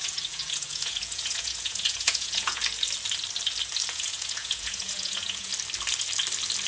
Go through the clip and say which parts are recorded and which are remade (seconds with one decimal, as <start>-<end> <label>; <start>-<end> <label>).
0.0-2.6 remade; 2.6-3.9 recorded; 3.9-5.5 remade; 5.5-6.7 recorded